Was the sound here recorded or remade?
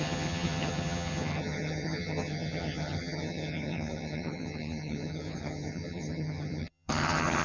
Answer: remade